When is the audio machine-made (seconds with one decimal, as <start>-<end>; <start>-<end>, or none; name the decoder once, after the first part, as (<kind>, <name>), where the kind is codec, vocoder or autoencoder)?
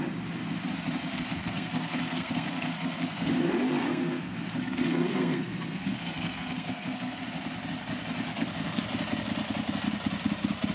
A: 1.1-3.3 (codec, SNAC); 3.8-7.2; 8.3-8.8